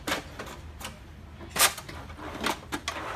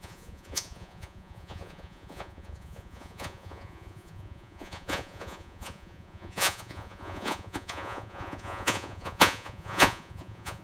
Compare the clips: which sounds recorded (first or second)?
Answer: first